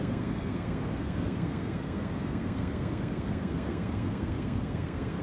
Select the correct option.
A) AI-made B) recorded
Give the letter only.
A